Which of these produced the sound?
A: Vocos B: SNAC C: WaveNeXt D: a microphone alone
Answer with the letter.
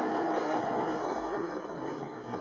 B